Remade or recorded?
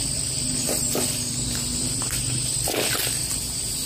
recorded